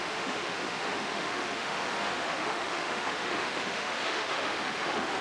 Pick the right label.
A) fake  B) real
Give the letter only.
A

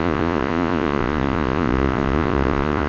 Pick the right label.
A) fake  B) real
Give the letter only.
A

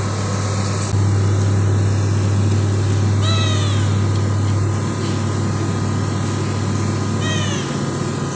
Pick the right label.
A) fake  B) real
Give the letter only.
B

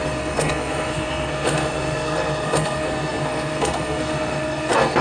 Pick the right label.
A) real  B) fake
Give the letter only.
B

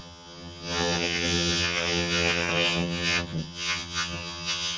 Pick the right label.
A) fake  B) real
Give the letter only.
A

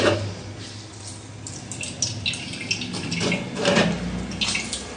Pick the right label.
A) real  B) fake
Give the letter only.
A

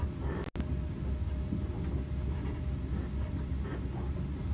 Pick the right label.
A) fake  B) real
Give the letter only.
B